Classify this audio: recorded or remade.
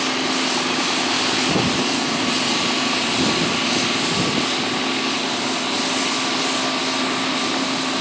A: recorded